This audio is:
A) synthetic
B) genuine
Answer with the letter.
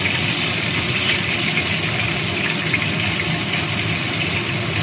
B